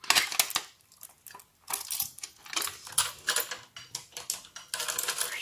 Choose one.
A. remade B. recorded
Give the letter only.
B